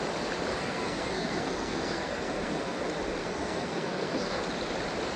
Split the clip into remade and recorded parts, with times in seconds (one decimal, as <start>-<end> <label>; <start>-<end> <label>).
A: 0.0-0.5 recorded; 0.5-2.8 remade; 2.8-3.2 recorded; 3.2-4.4 remade; 4.4-5.2 recorded